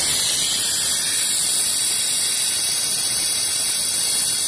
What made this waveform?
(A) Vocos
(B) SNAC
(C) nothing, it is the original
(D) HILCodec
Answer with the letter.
C